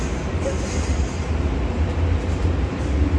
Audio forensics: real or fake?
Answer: real